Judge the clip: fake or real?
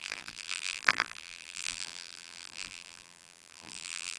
fake